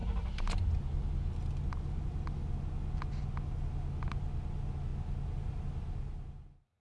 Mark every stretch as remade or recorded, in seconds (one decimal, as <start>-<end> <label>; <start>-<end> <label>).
0.0-6.8 recorded